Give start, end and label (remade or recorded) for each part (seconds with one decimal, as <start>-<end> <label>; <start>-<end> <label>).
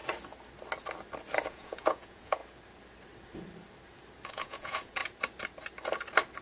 0.0-1.5 recorded; 1.5-2.4 remade; 2.4-4.3 recorded; 4.3-5.0 remade; 5.0-6.4 recorded